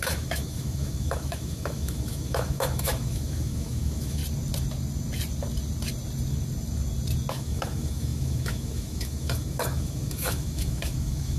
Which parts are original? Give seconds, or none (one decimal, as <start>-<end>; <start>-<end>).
4.2-7.3